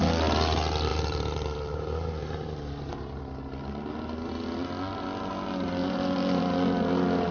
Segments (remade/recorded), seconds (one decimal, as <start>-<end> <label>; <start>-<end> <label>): 0.0-0.9 recorded; 0.9-3.2 remade; 3.2-5.8 recorded; 5.8-6.4 remade; 6.4-7.3 recorded